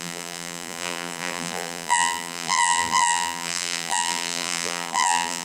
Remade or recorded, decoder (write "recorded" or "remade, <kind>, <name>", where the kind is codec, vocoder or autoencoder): remade, vocoder, BigVGAN v2